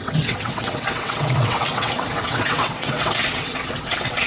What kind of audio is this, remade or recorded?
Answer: remade